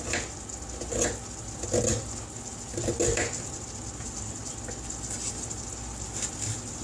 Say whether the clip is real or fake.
real